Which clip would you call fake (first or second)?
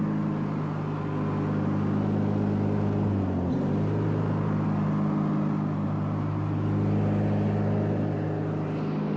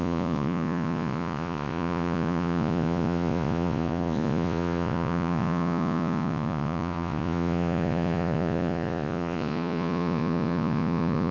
second